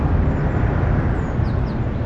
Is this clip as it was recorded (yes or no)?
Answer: yes